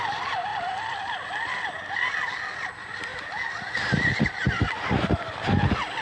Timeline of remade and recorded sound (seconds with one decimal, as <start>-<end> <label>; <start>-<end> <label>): 0.0-6.0 recorded